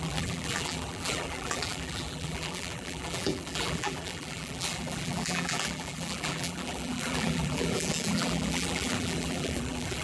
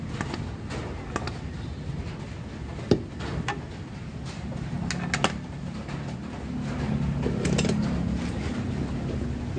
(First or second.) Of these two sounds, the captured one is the second